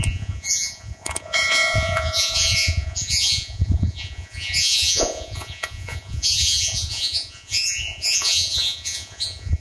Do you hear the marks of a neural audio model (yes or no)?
yes